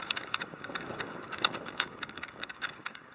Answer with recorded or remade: remade